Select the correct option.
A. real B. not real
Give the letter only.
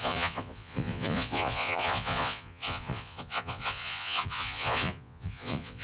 B